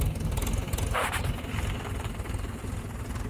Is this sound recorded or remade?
recorded